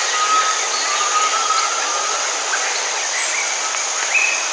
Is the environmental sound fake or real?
real